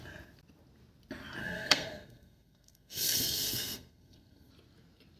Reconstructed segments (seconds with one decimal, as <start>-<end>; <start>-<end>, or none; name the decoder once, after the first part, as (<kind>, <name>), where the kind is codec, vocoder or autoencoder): 1.4-4.5 (codec, SNAC)